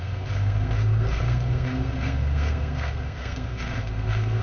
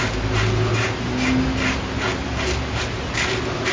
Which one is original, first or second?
second